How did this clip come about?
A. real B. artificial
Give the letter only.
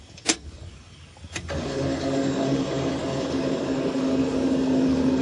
B